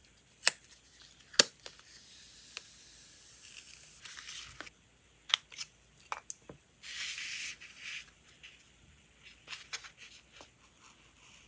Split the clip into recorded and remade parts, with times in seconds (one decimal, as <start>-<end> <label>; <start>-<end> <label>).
0.0-11.5 recorded

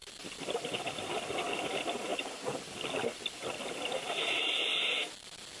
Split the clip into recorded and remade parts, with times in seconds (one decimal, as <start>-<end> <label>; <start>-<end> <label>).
0.0-5.6 recorded

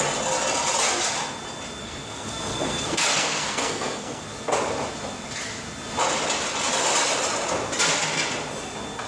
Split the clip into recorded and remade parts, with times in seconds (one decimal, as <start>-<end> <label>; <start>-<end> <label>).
0.0-1.8 recorded; 1.8-4.2 remade; 4.2-9.1 recorded